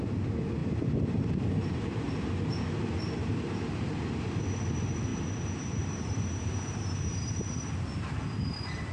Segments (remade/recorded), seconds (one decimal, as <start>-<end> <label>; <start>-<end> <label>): 0.0-0.6 recorded; 0.6-2.5 remade; 2.5-3.2 recorded; 3.2-4.4 remade; 4.4-5.1 recorded; 5.1-7.3 remade; 7.3-8.9 recorded